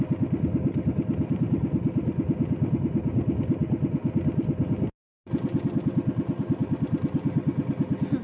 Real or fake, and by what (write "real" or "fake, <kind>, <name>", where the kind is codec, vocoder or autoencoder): real